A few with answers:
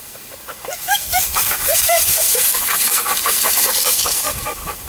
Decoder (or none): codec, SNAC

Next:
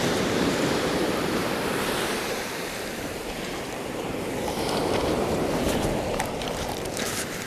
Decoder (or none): vocoder, BigVGAN v2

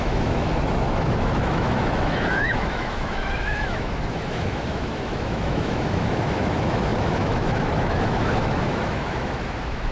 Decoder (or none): autoencoder, DAC-VAE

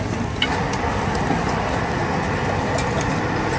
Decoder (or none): none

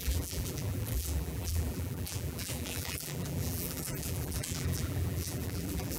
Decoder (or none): vocoder, BigVGAN v2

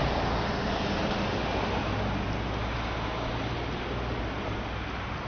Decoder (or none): none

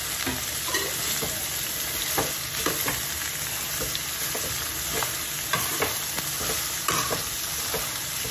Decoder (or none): none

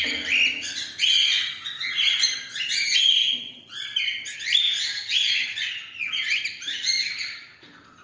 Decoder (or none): none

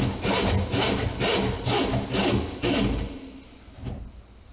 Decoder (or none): none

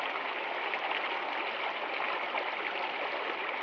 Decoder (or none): none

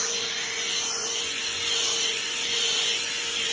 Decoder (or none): vocoder, Vocos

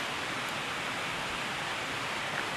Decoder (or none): none